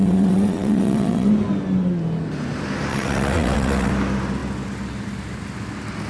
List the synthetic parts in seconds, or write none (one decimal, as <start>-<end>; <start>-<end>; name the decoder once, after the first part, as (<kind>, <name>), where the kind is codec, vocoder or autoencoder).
0.0-1.3 (vocoder, WaveNeXt); 2.9-3.9